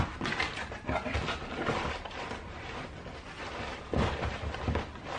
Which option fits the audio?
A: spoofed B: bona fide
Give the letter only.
B